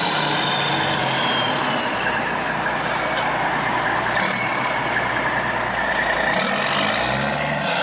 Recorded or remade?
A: recorded